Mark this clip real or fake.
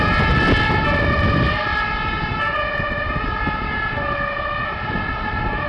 real